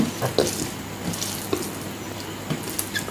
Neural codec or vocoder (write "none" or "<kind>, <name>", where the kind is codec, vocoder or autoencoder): none